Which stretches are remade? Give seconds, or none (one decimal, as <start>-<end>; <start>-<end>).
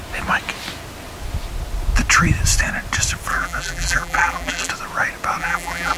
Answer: 3.3-4.7; 5.4-6.0